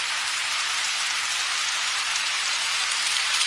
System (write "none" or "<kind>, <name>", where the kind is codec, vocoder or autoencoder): vocoder, BigVGAN v2